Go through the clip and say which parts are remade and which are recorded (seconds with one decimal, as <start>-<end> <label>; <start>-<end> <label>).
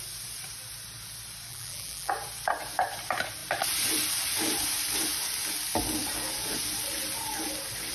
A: 0.0-1.5 recorded; 1.5-2.1 remade; 2.1-7.9 recorded